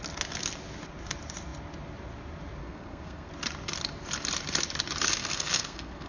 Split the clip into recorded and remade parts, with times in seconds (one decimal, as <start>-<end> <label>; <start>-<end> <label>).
0.0-2.6 recorded; 2.6-3.3 remade; 3.3-5.2 recorded; 5.2-6.1 remade